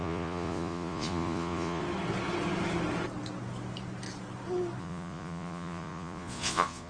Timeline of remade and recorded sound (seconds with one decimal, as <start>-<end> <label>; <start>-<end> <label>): 0.0-1.8 remade; 1.8-4.8 recorded; 4.8-6.9 remade